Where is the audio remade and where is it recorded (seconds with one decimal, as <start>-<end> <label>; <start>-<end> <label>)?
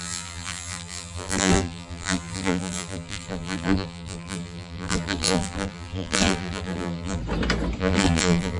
0.0-7.2 remade; 7.2-7.8 recorded; 7.8-8.6 remade